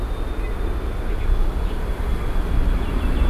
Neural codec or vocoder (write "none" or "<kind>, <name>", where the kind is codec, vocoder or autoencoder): none